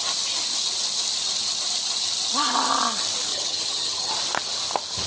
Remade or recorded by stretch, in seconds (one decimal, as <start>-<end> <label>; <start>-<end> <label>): 0.0-3.3 recorded; 3.3-4.1 remade; 4.1-5.1 recorded